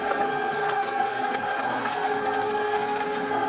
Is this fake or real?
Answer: fake